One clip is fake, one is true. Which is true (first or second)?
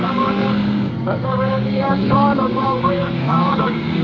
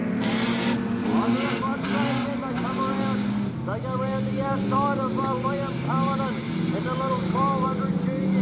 second